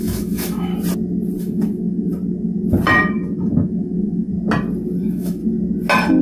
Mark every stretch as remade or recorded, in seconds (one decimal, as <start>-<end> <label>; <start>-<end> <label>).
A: 0.0-0.7 remade; 0.7-1.4 recorded; 1.4-2.1 remade; 2.1-3.1 recorded; 3.1-4.3 remade; 4.3-5.0 recorded; 5.0-5.4 remade; 5.4-6.2 recorded